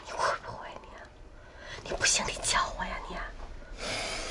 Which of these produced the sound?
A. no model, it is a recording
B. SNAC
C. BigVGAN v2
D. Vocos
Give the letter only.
A